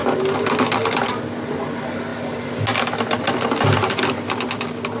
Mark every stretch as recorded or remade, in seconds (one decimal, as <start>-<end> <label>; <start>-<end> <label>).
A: 0.0-5.0 recorded